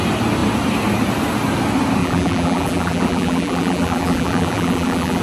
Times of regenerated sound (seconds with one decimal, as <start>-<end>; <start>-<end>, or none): 2.0-5.2